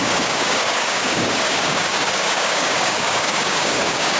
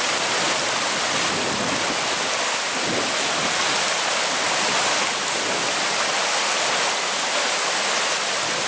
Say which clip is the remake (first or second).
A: first